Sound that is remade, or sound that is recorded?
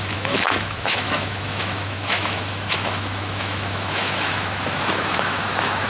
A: remade